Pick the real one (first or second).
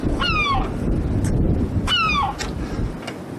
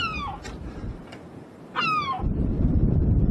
first